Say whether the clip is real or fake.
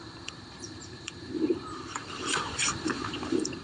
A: fake